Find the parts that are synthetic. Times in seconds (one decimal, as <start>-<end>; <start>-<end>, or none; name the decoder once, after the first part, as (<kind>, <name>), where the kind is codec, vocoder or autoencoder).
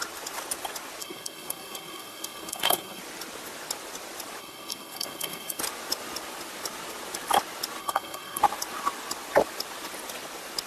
1.0-3.0 (codec, SNAC); 4.4-5.6; 7.8-8.4